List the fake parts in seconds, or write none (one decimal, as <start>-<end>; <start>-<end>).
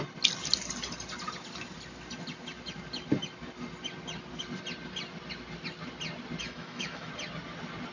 6.4-7.1